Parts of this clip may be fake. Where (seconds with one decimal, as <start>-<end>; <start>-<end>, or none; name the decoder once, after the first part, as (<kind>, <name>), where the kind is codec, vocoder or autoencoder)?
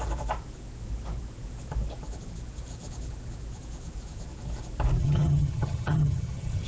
5.0-6.7 (vocoder, HiFi-GAN)